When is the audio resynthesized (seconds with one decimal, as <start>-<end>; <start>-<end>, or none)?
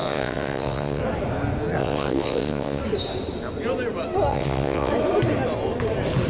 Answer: 0.0-1.0; 1.8-2.8; 4.3-4.9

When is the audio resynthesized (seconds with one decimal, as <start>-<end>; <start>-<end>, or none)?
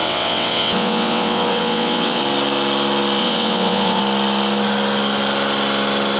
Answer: 0.0-2.2; 3.2-4.0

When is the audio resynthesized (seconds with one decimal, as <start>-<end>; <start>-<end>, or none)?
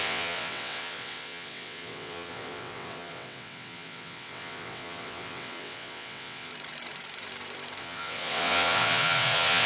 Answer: 0.0-6.5; 7.8-9.7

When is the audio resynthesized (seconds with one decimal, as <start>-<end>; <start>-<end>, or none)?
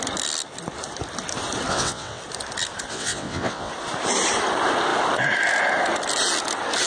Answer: 1.7-2.2; 2.9-3.7